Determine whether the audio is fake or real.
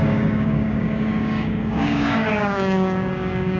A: fake